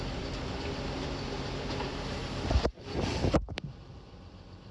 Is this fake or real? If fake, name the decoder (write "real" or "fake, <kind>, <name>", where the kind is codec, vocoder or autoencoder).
fake, vocoder, BigVGAN v2